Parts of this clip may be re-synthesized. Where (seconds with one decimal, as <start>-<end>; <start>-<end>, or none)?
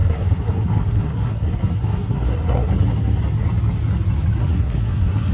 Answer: 0.0-2.7; 4.4-5.3